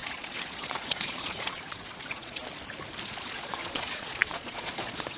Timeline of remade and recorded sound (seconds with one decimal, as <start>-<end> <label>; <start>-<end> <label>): 0.0-2.4 remade; 2.4-3.0 recorded; 3.0-5.2 remade

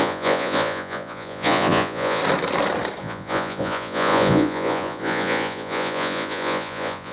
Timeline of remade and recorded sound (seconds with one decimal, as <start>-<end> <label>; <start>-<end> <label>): 0.0-2.2 remade; 2.2-3.0 recorded; 3.0-7.1 remade

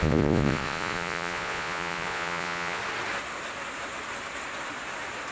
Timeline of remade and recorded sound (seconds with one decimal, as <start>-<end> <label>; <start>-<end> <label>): 0.0-2.8 remade; 2.8-5.3 recorded